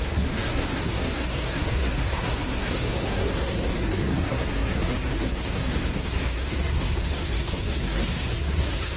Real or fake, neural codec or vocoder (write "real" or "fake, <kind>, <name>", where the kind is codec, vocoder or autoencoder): fake, codec, SNAC